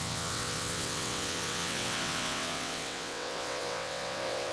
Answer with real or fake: fake